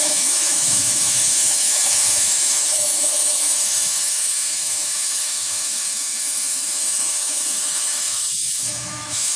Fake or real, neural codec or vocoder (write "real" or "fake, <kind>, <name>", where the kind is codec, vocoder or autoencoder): fake, autoencoder, DAC-VAE